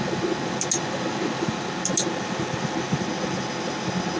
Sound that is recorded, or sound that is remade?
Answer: recorded